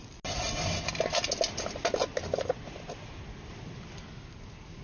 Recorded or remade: recorded